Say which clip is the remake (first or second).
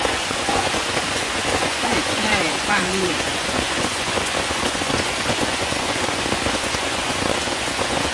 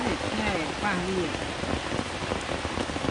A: first